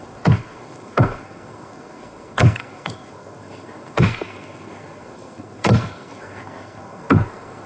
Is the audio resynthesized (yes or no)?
yes